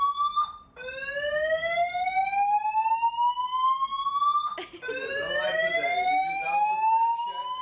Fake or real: real